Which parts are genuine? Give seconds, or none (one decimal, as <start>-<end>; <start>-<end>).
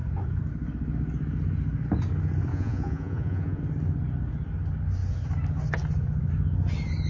0.0-2.5; 3.6-7.1